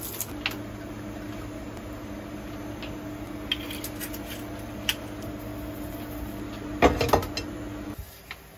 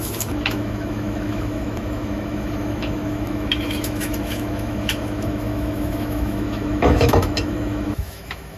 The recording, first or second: first